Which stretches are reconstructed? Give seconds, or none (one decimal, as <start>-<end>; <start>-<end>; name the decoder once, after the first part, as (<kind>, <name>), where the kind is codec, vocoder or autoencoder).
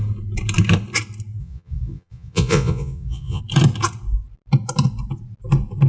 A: 1.4-3.4 (vocoder, Vocos)